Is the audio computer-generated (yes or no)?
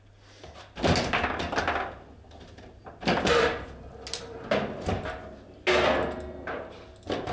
no